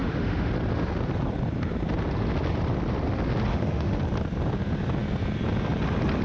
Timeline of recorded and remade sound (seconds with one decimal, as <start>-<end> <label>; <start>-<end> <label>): 0.0-0.5 remade; 0.5-3.5 recorded; 3.5-4.0 remade; 4.0-6.2 recorded